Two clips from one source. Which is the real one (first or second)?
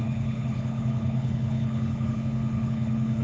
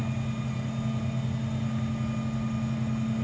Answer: second